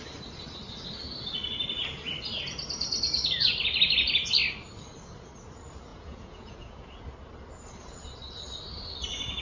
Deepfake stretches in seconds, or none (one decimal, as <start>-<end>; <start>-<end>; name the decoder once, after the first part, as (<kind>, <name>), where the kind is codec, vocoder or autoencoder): 5.9-7.0 (vocoder, Vocos)